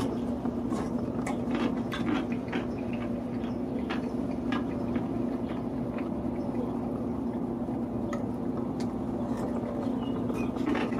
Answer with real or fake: real